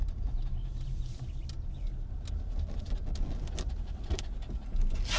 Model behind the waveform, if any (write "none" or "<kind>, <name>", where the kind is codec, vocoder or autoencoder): none